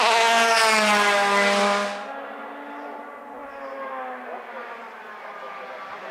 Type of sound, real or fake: real